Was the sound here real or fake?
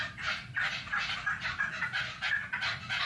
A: real